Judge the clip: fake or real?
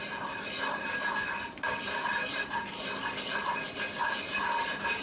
real